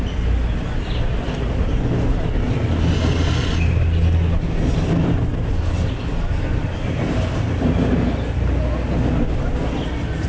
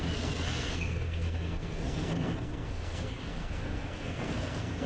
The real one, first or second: first